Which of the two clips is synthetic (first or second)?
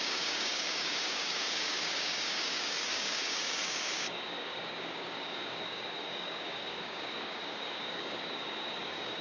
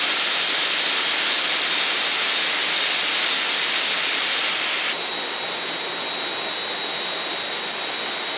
first